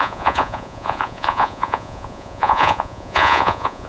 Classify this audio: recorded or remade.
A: remade